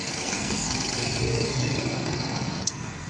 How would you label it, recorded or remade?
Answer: remade